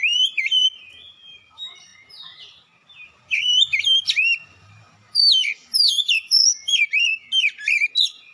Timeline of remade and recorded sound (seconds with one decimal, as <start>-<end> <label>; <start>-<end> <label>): 0.0-8.3 remade